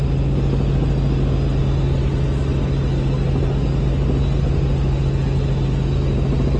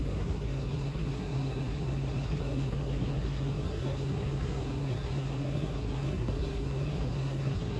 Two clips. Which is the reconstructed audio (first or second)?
second